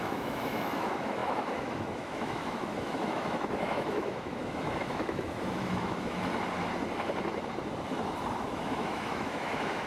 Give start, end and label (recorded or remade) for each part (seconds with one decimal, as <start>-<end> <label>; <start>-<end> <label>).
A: 0.0-6.3 remade; 6.3-8.4 recorded; 8.4-9.9 remade